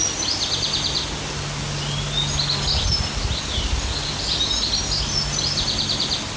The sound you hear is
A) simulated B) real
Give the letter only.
B